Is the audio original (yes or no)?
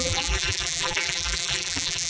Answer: no